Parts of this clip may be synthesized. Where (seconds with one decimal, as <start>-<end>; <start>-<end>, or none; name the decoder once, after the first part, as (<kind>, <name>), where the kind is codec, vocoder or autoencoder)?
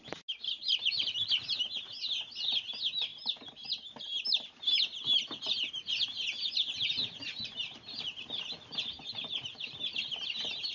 7.0-10.7 (vocoder, BigVGAN v2)